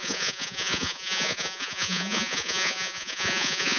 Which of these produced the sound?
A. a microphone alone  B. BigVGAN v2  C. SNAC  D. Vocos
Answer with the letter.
D